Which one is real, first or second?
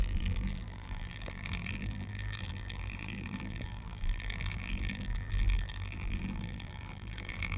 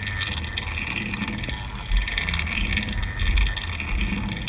second